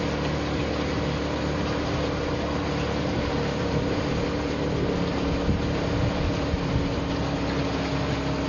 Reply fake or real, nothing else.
real